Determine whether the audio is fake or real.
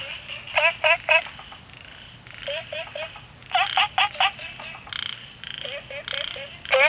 real